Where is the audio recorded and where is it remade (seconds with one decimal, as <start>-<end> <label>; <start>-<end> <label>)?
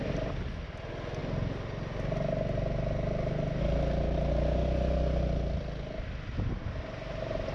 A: 0.0-7.5 recorded